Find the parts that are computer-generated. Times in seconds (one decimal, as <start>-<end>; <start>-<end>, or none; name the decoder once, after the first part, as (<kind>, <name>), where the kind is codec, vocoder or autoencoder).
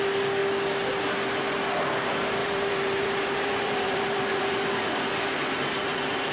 2.4-4.4 (vocoder, BigVGAN v2)